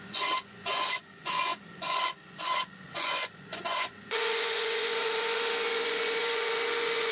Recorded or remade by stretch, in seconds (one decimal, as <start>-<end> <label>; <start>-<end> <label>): 0.0-7.1 remade